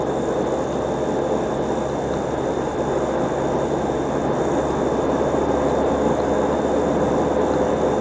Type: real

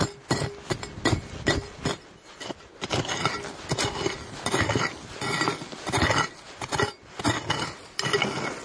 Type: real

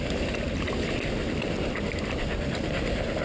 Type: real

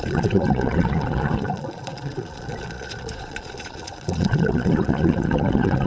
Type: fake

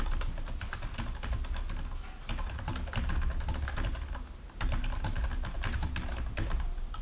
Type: real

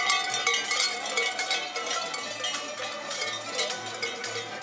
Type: real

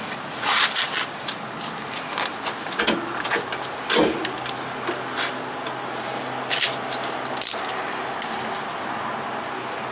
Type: real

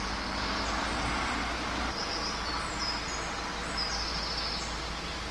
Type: real